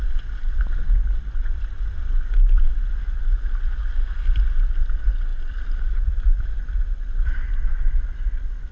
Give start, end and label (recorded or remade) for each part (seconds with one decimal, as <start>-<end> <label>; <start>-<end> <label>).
0.0-5.3 recorded; 5.3-6.6 remade; 6.6-8.7 recorded